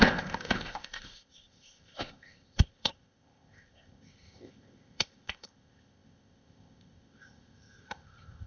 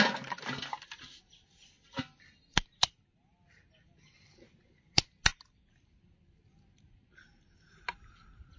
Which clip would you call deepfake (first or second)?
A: first